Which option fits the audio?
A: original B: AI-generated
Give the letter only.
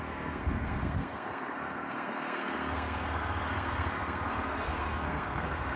B